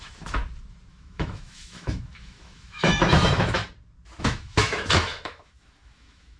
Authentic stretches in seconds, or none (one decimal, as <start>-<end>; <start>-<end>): 0.4-0.9; 3.6-4.2